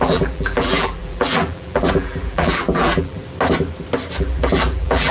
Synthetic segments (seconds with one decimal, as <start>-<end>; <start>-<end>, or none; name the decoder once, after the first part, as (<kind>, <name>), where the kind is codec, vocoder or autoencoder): 0.0-3.2 (vocoder, BigVGAN v2); 4.2-5.1